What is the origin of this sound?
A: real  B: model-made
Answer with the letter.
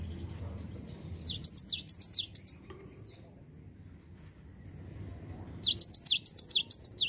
A